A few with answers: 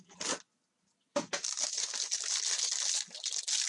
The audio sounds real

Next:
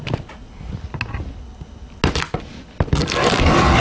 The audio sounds real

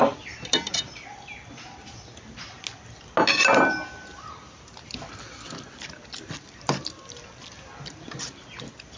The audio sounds real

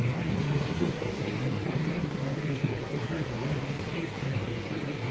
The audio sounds fake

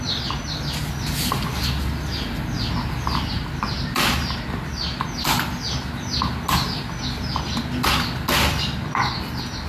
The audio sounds real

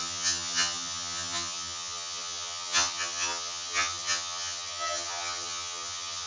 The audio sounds fake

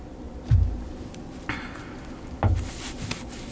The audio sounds real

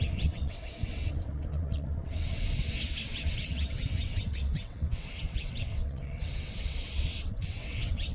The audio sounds fake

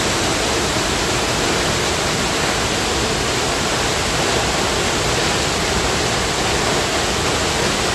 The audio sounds real